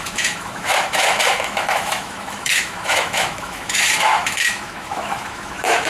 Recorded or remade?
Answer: remade